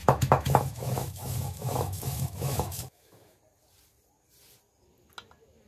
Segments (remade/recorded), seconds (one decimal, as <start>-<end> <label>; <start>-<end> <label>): 0.0-3.4 remade; 3.4-5.7 recorded